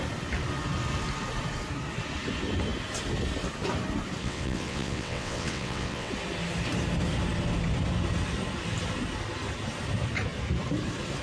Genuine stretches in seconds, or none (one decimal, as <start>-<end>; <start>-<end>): 0.0-4.2; 6.1-11.2